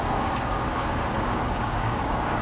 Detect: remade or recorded remade